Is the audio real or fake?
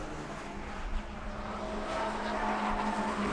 real